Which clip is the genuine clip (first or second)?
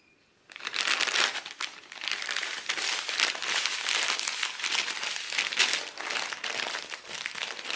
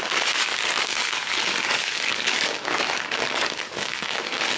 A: first